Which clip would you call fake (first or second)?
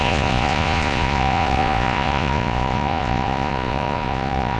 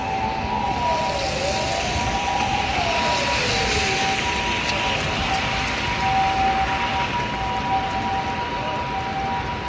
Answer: first